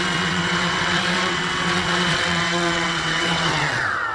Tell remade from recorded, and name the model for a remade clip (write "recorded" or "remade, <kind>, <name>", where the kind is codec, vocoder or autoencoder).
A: remade, vocoder, WaveNeXt